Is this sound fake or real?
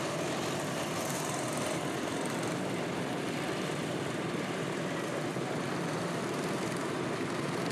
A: fake